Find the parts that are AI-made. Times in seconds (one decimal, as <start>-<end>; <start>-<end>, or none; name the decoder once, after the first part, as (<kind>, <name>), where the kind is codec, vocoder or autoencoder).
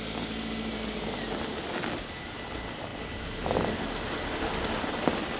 none